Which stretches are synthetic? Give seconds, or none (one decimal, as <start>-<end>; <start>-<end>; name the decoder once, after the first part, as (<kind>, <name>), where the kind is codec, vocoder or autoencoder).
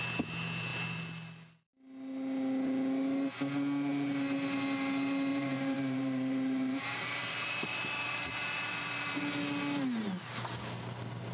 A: 5.3-9.2 (vocoder, BigVGAN v2)